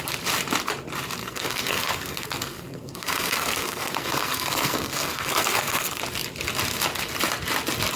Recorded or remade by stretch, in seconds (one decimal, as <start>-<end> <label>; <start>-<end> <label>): 0.0-1.2 recorded; 1.2-6.0 remade; 6.0-8.0 recorded